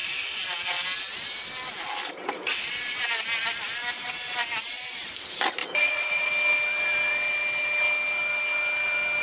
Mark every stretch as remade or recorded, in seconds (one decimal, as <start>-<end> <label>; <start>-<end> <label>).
0.0-5.6 recorded; 5.6-6.3 remade; 6.3-9.2 recorded